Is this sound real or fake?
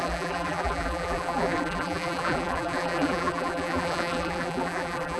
fake